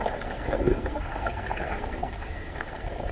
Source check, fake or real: fake